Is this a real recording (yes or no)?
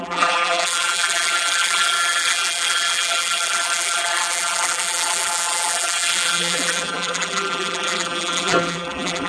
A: no